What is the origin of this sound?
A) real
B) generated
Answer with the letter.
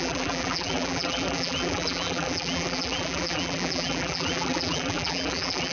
B